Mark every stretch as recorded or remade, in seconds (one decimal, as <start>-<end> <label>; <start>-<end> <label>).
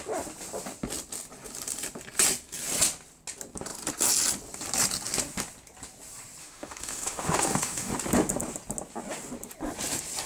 0.0-6.4 recorded; 6.4-7.9 remade; 7.9-10.3 recorded